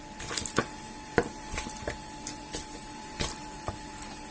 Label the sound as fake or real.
real